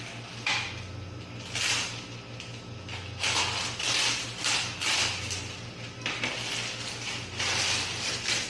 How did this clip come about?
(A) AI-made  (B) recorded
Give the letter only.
B